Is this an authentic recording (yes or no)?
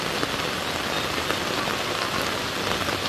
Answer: yes